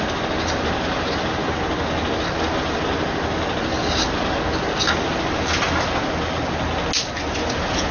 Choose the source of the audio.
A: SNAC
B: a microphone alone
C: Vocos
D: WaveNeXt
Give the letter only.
B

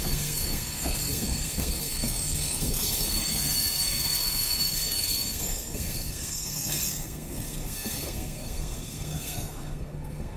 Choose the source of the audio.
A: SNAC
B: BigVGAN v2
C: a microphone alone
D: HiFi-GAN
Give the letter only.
A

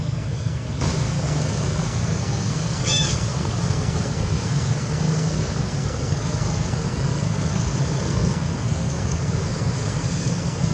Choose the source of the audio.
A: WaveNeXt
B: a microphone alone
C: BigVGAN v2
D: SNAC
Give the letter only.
D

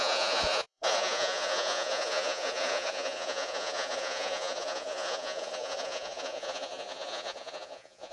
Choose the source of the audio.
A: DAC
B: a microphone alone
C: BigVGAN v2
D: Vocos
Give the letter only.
D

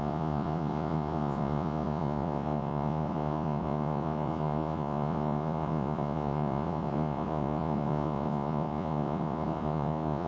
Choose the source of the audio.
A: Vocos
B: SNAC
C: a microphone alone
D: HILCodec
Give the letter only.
A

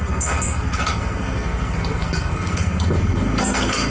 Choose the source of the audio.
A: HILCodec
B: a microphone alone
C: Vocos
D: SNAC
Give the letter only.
D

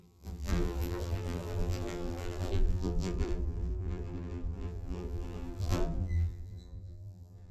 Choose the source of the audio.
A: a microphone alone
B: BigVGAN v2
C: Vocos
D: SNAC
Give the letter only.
B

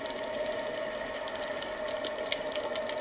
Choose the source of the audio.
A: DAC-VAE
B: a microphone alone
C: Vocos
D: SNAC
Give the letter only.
B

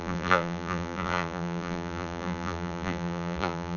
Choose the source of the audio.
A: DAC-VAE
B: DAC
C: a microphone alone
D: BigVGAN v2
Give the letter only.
D